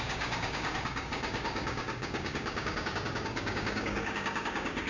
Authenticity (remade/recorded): remade